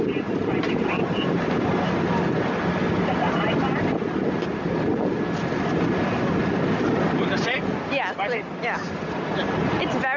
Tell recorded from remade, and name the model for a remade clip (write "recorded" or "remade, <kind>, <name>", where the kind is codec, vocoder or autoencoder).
recorded